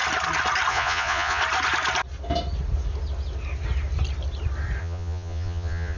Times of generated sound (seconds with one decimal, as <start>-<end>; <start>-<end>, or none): 0.7-1.4; 4.8-6.0